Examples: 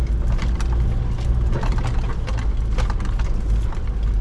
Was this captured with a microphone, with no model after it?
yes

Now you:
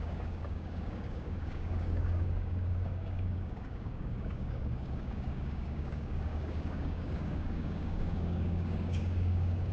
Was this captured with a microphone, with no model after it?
no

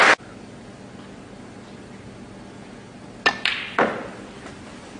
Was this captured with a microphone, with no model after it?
yes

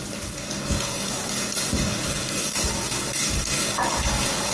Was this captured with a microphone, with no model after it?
no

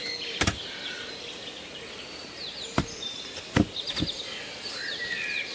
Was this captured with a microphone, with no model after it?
yes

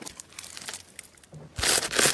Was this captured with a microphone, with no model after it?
yes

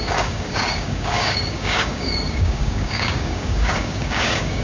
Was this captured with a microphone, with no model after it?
no